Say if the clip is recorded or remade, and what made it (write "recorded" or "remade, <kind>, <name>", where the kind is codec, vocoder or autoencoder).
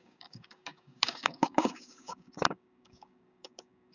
remade, codec, DAC